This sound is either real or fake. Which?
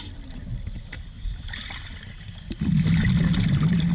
real